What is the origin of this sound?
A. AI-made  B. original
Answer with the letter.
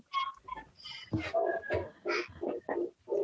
B